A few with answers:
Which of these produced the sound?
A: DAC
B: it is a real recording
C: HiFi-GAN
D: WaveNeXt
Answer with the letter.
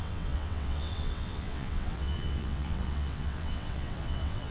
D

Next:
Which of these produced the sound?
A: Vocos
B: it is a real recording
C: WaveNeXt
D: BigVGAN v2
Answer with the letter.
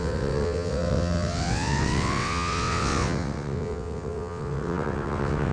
C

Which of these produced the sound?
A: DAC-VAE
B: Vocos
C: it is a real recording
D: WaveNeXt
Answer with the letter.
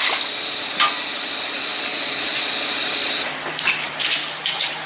C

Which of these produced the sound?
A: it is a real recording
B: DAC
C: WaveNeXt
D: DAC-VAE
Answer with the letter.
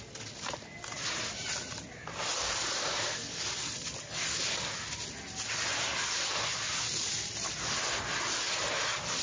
A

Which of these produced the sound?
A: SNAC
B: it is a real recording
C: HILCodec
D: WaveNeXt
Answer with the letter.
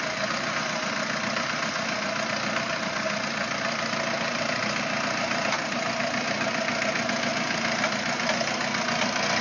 B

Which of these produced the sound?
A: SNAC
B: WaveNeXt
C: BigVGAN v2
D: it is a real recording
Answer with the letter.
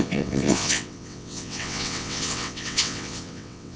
B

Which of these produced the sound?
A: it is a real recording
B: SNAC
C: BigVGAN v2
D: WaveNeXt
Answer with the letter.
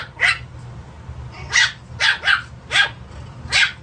A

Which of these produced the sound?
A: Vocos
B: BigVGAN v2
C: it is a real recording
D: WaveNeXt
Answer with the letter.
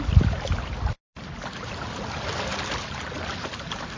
C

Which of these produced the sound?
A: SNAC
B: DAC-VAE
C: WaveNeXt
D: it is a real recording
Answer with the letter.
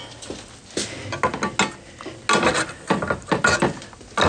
D